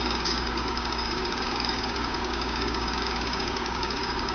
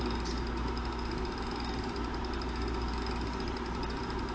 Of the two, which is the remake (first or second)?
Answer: first